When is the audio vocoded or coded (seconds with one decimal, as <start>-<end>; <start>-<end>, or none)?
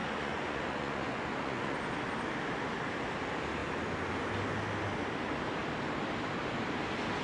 0.0-1.9